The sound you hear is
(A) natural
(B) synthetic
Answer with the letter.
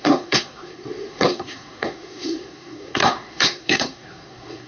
B